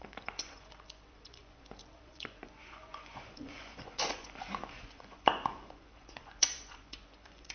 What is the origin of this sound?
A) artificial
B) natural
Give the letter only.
A